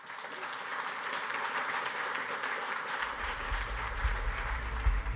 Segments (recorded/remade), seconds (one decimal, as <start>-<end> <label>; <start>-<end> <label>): 0.0-5.2 recorded